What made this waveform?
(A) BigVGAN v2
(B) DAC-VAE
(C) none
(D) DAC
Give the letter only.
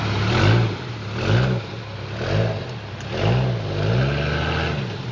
C